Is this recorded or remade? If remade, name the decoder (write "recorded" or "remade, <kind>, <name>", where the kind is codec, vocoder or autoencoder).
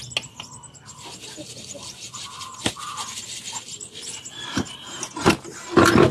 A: recorded